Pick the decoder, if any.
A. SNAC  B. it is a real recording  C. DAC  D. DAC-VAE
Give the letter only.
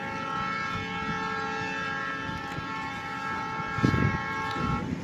B